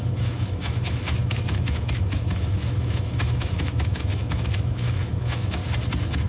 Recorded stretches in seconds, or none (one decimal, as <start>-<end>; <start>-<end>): 5.6-6.3